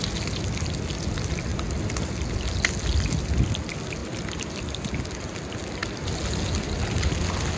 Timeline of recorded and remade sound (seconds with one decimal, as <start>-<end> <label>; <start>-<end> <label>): 0.0-7.6 recorded